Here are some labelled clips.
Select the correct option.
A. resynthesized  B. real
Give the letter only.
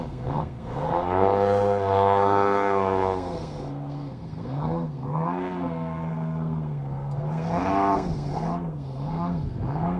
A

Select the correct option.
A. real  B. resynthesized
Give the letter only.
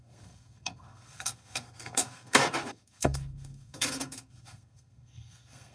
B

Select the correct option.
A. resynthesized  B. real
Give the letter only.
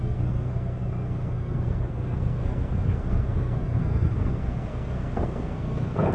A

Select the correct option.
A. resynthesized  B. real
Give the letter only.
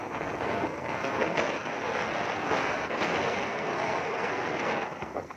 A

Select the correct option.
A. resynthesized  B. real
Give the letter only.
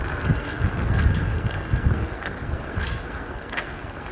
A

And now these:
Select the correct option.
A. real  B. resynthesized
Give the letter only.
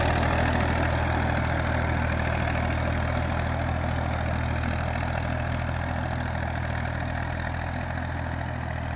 A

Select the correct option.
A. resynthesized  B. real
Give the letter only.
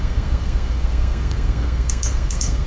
A